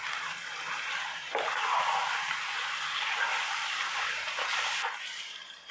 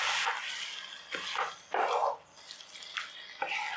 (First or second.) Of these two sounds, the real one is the second